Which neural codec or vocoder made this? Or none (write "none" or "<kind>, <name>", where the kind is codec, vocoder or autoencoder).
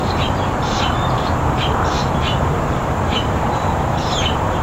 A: vocoder, BigVGAN v2